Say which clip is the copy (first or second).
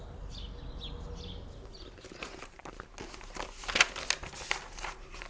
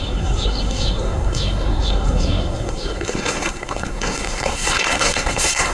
second